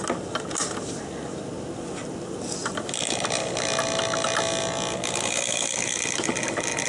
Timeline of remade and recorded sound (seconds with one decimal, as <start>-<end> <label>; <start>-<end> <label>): 0.0-6.9 recorded

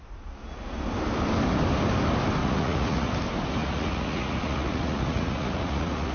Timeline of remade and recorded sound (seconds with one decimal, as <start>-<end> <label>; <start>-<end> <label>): 0.0-2.4 recorded; 2.4-3.1 remade; 3.1-3.6 recorded; 3.6-6.1 remade